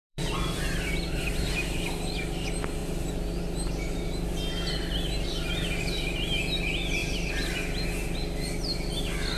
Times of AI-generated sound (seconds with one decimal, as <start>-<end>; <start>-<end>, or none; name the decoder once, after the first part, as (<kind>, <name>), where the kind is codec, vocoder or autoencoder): 0.0-1.0 (vocoder, BigVGAN v2); 7.0-7.9